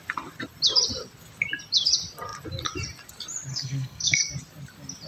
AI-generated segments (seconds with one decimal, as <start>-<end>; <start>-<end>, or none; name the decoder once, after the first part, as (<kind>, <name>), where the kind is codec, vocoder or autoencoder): 3.5-4.2 (codec, SNAC)